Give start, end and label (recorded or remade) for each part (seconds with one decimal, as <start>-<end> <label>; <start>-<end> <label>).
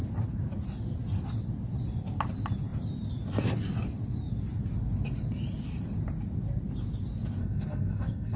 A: 0.0-7.4 recorded; 7.4-8.4 remade